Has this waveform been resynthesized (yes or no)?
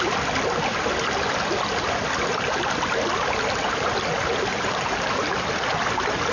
no